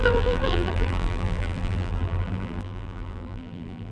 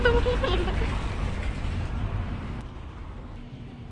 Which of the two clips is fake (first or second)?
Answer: first